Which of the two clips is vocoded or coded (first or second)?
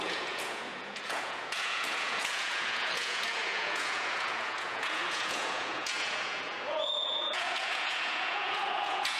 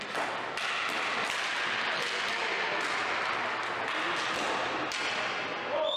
first